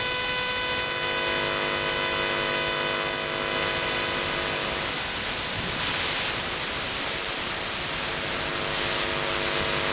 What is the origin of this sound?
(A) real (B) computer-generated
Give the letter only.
A